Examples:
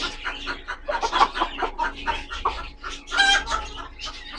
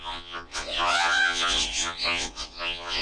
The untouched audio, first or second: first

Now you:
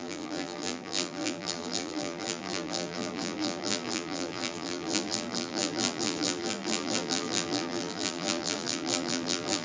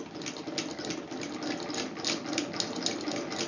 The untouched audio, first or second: second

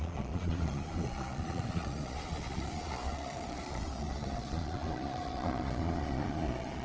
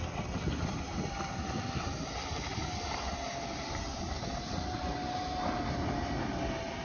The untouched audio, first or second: second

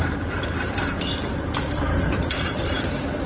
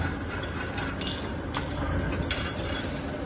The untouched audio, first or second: second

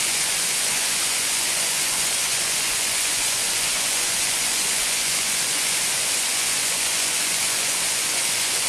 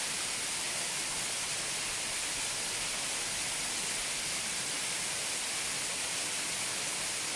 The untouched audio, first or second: second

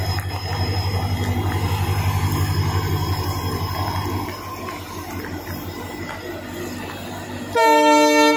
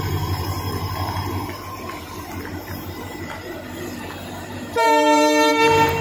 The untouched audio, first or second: first